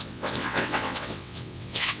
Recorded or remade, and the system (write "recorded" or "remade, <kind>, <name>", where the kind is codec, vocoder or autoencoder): remade, vocoder, WaveNeXt